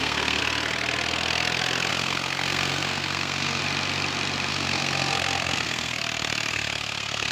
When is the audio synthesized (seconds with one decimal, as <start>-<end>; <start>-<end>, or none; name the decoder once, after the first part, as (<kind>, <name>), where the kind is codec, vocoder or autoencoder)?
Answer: 0.0-0.4 (codec, SNAC); 1.9-3.6; 4.5-6.0; 6.5-7.3